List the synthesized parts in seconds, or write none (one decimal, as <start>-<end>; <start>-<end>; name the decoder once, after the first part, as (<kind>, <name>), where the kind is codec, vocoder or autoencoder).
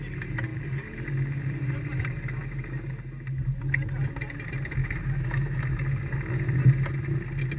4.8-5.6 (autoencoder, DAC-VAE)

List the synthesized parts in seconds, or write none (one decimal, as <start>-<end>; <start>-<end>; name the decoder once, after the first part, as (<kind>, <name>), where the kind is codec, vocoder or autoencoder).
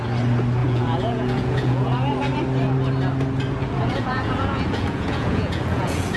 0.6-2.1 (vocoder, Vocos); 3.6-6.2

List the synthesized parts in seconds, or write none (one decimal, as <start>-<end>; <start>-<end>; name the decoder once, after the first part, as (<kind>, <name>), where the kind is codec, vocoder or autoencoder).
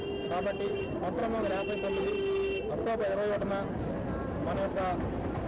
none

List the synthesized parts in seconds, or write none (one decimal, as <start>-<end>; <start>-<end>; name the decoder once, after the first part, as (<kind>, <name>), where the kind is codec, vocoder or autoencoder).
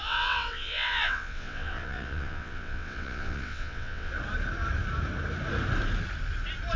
0.0-4.1 (vocoder, WaveNeXt)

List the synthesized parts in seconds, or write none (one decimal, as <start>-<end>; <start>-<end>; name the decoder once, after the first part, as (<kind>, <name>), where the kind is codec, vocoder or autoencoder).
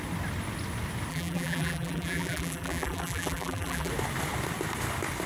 1.1-3.9 (vocoder, BigVGAN v2)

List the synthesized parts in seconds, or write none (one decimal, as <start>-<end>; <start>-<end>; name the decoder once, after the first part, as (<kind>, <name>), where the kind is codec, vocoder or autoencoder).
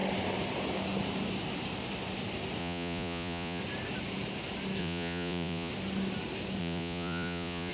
2.6-3.6 (vocoder, Vocos); 4.8-5.7; 6.6-7.7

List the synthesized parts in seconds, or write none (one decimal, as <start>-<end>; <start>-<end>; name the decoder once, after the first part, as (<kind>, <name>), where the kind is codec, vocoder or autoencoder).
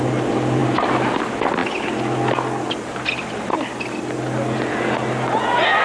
none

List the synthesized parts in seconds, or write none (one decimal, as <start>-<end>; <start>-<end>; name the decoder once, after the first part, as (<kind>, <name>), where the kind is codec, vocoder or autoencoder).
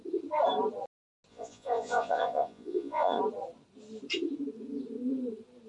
1.3-3.2 (vocoder, Vocos)